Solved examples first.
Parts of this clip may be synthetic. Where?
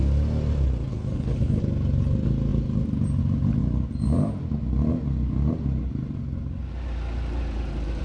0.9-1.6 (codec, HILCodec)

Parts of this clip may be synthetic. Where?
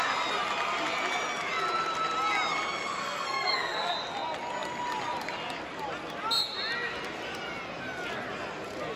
3.0-3.9 (codec, SNAC)